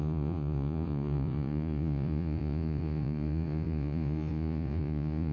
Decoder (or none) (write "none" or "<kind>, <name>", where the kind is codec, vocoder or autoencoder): vocoder, Vocos